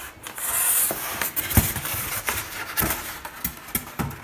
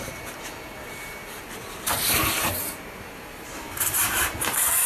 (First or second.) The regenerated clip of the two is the second